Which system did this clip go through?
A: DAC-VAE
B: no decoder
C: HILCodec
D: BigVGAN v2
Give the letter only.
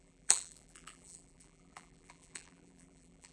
D